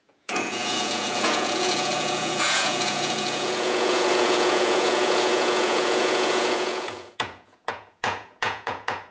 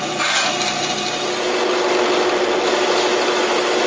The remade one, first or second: first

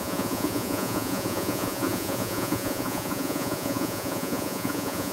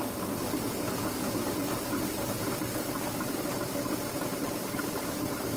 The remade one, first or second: first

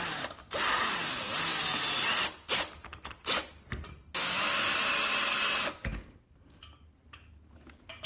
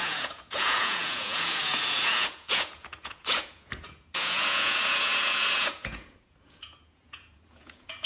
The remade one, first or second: second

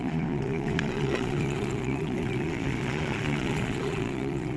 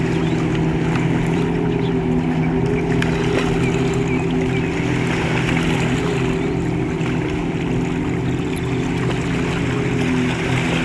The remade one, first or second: first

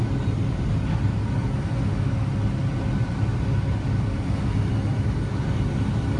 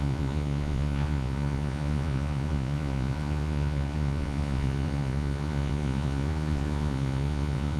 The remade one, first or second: second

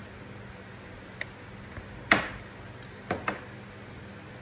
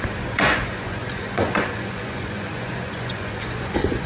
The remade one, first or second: second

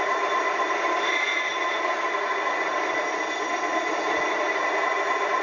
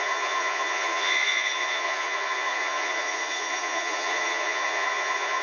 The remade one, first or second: second